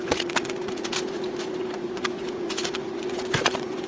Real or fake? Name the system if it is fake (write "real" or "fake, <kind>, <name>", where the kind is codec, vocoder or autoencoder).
fake, vocoder, Vocos